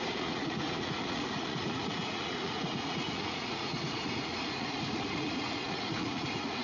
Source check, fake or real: fake